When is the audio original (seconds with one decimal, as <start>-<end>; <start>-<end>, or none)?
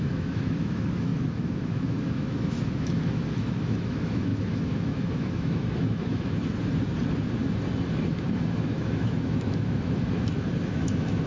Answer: 6.4-8.1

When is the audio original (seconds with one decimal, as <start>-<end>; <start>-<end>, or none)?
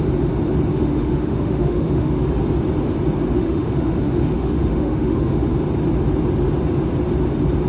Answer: 0.0-0.7; 2.2-3.4; 5.6-7.7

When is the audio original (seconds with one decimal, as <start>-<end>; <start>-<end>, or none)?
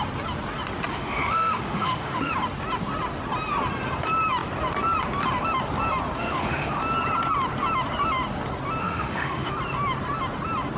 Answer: 0.0-0.9; 2.3-6.2; 6.8-8.8; 9.5-10.8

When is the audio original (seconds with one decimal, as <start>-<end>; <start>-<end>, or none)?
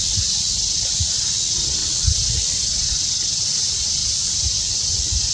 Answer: 0.0-5.3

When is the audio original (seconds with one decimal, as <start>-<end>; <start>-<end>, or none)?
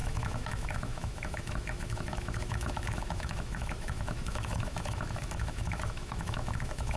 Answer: none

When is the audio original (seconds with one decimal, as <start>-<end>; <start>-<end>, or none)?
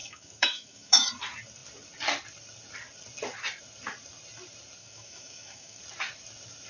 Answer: 1.1-4.8; 5.8-6.7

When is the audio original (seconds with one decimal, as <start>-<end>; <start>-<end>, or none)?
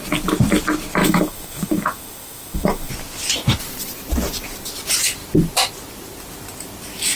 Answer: 0.0-1.0; 2.9-7.2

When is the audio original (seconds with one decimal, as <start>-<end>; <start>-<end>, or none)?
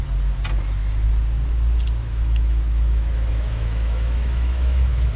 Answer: 0.0-2.0